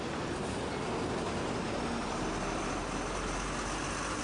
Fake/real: real